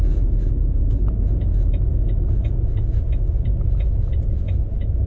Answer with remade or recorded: remade